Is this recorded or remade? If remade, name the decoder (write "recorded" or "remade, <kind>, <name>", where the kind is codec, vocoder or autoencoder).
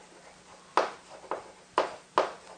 recorded